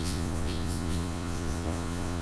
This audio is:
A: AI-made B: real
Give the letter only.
A